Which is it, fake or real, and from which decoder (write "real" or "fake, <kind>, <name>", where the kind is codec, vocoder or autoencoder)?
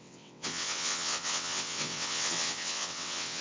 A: fake, vocoder, WaveNeXt